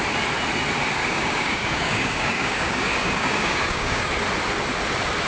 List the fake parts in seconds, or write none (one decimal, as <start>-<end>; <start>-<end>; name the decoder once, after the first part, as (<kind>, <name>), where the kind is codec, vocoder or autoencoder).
1.0-4.2 (codec, DAC)